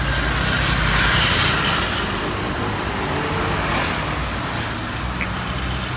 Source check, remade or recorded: recorded